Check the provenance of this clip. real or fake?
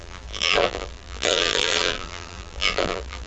fake